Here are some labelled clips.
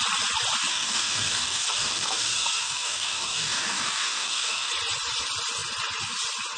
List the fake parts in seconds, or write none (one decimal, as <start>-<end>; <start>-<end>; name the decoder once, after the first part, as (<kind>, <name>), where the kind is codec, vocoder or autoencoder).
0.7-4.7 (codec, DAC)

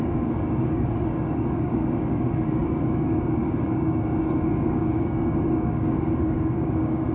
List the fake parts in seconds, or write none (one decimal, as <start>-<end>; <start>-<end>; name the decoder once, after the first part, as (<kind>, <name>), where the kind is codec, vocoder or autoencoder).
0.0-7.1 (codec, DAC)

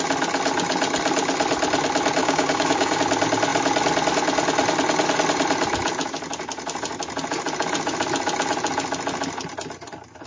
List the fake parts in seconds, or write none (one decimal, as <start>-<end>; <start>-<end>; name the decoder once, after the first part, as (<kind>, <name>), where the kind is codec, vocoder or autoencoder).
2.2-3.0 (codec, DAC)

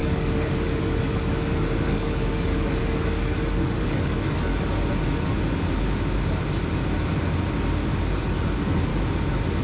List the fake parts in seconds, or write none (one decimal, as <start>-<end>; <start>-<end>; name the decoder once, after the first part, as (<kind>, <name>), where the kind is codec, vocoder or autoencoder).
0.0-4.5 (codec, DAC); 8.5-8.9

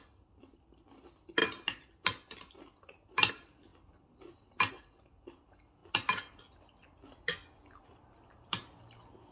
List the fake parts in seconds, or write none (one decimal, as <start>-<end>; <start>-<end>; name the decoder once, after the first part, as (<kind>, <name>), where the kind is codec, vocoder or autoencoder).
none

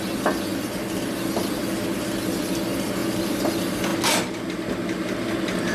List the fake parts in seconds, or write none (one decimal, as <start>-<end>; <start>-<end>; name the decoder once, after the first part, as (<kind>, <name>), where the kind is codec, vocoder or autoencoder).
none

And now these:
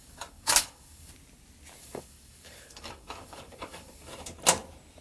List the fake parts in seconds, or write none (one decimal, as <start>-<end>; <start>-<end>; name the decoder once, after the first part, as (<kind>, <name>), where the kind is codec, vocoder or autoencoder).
0.0-1.1 (codec, DAC); 1.8-4.1

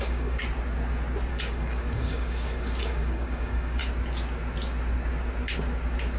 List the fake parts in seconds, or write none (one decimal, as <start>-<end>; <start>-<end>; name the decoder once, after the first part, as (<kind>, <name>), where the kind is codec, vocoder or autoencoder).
0.0-0.4 (codec, DAC); 1.3-3.8